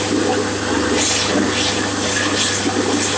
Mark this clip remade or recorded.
recorded